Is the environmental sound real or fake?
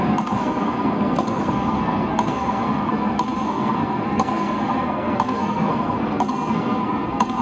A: fake